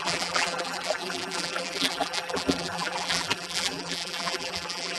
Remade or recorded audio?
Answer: remade